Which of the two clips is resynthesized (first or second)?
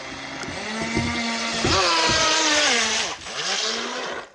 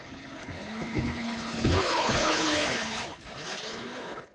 second